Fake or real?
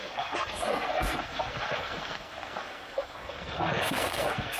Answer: fake